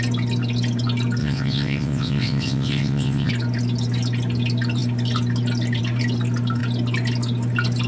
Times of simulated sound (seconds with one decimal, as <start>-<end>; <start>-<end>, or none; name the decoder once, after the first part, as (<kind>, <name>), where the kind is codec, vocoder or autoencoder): 1.2-3.3 (vocoder, WaveNeXt)